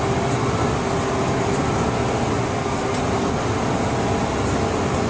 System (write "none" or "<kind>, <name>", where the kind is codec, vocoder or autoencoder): none